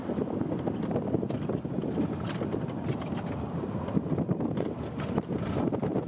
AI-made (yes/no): no